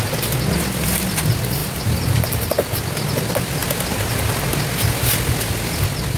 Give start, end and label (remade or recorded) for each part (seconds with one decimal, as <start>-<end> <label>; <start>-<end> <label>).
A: 0.0-1.6 recorded; 1.6-2.8 remade; 2.8-6.2 recorded